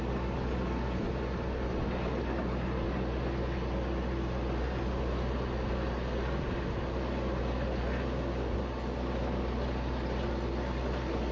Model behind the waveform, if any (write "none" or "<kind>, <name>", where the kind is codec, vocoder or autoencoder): none